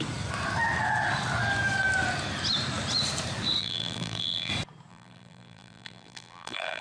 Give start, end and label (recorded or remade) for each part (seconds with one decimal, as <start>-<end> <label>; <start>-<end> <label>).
0.0-3.6 recorded; 3.6-4.5 remade; 4.5-4.9 recorded; 4.9-6.8 remade